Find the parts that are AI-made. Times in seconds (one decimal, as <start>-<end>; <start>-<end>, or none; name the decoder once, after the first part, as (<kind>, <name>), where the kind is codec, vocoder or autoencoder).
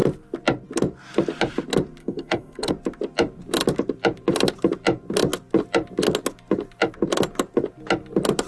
2.0-2.7 (codec, SNAC)